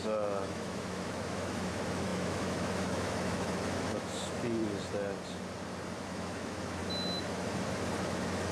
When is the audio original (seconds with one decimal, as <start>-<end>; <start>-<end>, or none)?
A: 4.6-6.0; 6.8-8.0